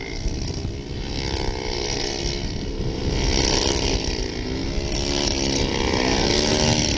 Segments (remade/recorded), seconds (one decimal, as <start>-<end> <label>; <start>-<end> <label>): 0.0-7.0 recorded